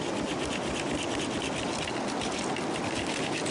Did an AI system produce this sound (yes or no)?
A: no